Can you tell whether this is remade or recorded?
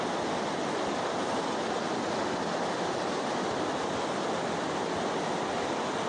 recorded